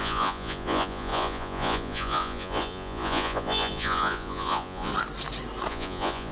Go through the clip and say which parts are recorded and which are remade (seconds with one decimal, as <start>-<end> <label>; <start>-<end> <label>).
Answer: 0.0-4.9 remade; 4.9-5.7 recorded; 5.7-6.3 remade